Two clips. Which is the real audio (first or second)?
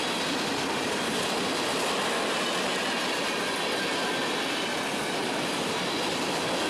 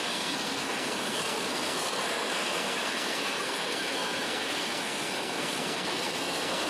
first